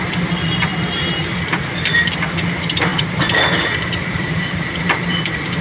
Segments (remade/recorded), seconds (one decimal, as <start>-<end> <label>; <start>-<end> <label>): 0.0-2.9 recorded; 2.9-5.6 remade